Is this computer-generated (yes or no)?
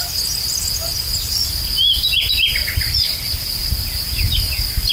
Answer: no